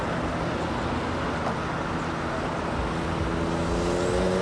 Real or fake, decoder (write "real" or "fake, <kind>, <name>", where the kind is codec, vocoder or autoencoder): real